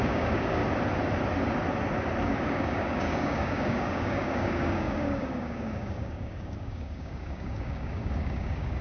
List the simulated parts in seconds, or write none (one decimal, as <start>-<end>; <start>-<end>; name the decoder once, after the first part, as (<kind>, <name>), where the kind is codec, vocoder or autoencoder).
0.0-0.6 (codec, DAC); 2.2-8.8